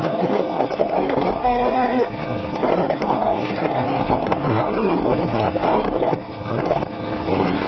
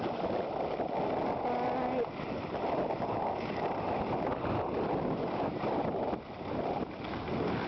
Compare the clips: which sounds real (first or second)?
second